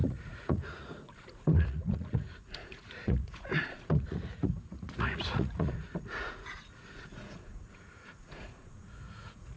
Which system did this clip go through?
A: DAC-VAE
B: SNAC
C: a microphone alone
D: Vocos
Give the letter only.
D